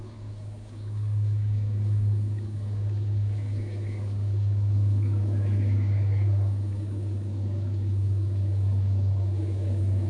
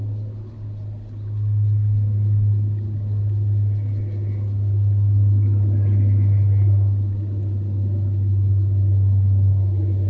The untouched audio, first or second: second